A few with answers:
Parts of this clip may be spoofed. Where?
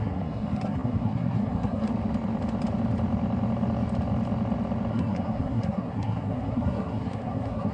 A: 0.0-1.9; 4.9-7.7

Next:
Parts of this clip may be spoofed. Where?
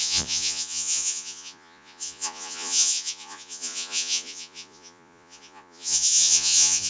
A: 0.0-6.9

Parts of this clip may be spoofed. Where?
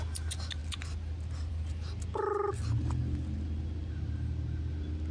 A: none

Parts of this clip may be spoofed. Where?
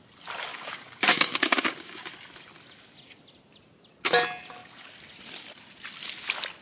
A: 0.5-2.1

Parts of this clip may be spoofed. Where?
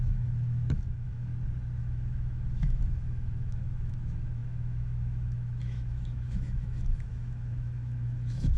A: 0.0-1.3; 1.8-8.6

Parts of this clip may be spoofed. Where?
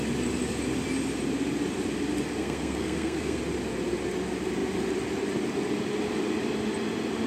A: 2.4-3.4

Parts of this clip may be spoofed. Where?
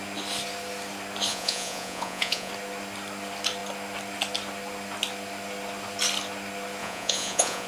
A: 1.3-2.5; 6.8-7.7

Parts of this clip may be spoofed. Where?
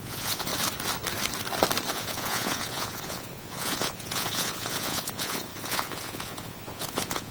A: 0.0-0.5; 1.9-7.3